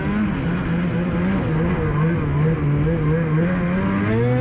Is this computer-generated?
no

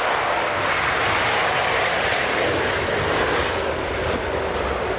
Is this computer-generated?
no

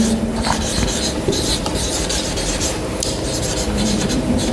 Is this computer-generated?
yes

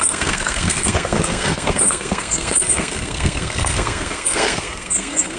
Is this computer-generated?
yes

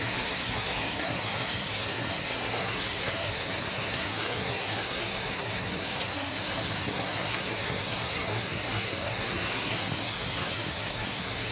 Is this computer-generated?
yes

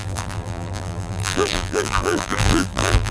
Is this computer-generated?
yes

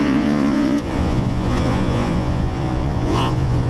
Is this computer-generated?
yes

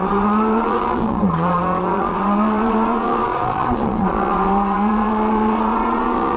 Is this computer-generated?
yes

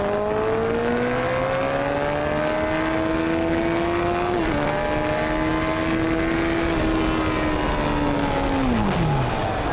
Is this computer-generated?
no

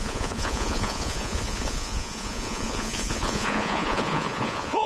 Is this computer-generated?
yes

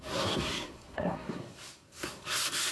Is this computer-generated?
yes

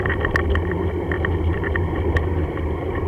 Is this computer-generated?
no